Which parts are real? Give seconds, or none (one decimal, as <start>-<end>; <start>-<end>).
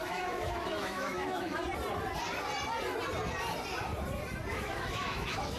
1.6-4.5